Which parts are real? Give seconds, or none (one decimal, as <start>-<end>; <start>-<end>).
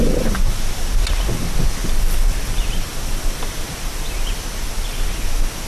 0.0-5.7